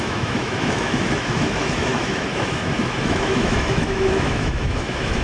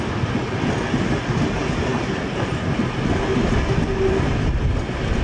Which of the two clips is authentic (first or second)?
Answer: second